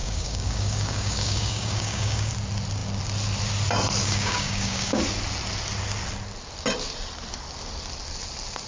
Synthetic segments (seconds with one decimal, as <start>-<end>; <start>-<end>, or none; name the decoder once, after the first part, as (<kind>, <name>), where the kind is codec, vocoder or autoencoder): 0.0-2.3 (codec, DAC); 4.0-5.0